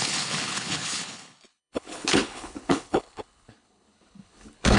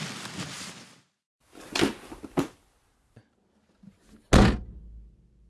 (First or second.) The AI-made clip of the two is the first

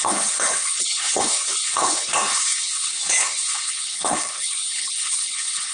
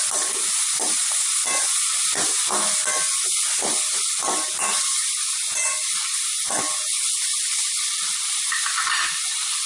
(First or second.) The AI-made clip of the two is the first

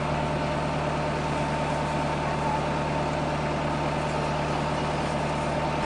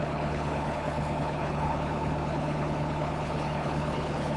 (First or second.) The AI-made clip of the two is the second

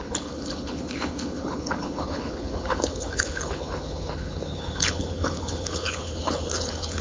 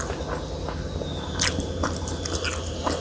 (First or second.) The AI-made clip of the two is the first